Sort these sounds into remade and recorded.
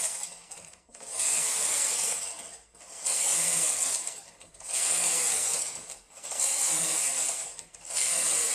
remade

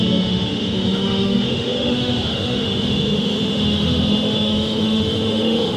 remade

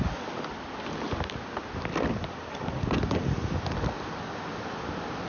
recorded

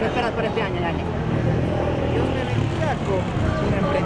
recorded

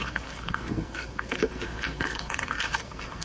remade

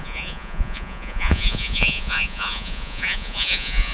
remade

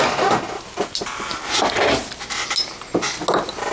recorded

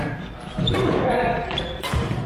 recorded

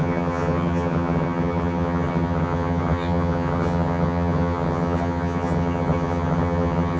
remade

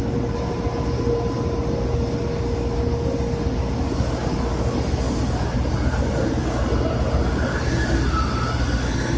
recorded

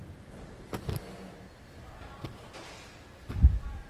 recorded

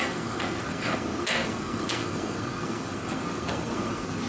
remade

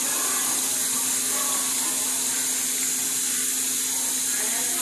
recorded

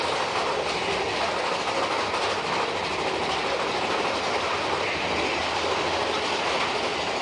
recorded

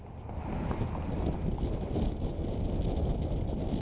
recorded